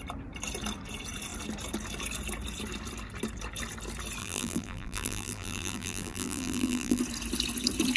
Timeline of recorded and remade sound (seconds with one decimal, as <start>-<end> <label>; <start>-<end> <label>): 0.0-4.2 recorded; 4.2-7.0 remade; 7.0-8.0 recorded